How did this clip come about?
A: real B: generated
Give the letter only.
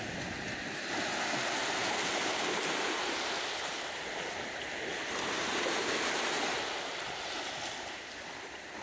A